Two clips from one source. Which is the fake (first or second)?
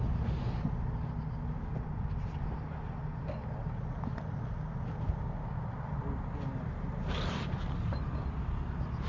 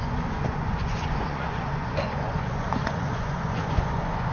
second